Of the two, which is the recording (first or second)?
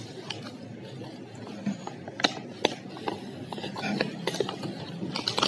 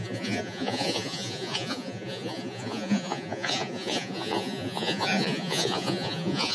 first